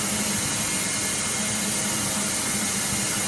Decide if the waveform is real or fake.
real